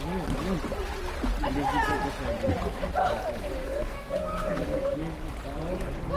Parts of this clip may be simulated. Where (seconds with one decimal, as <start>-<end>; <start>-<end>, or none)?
3.6-5.0